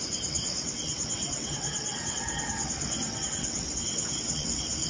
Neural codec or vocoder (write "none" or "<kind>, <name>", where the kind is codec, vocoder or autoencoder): vocoder, WaveNeXt